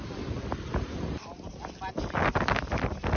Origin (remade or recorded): recorded